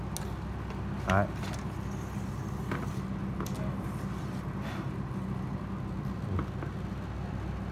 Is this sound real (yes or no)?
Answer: yes